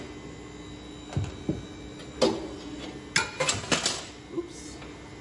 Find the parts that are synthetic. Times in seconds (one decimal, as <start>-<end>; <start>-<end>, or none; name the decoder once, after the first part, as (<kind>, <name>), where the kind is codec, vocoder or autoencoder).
none